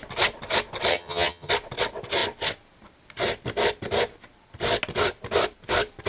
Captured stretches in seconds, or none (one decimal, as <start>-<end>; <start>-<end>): 0.0-0.9; 1.5-6.1